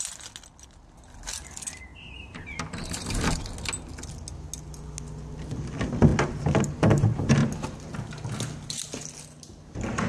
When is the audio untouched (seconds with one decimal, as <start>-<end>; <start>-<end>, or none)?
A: 0.0-1.9; 3.4-10.1